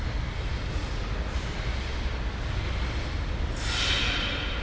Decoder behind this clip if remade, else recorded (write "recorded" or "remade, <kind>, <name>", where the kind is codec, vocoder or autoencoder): recorded